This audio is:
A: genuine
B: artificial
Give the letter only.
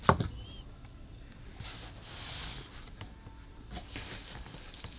A